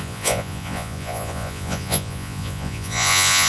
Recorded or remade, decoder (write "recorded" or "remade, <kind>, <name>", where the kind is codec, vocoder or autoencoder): remade, vocoder, Vocos